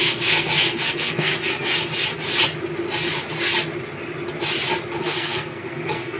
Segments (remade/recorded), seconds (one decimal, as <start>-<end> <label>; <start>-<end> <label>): 0.0-1.3 remade; 1.3-5.0 recorded; 5.0-6.2 remade